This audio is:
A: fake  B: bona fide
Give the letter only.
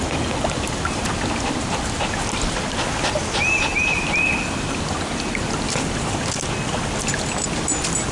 B